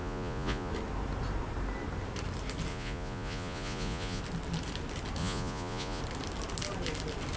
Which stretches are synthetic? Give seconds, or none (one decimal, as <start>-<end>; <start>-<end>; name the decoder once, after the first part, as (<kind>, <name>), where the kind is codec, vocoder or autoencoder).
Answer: 0.0-0.7 (vocoder, Vocos); 2.7-4.2; 5.2-6.0